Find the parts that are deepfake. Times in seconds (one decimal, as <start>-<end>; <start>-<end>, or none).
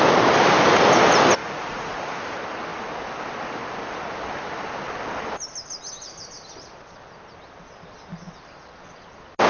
1.4-2.1